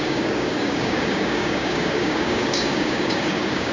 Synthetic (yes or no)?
yes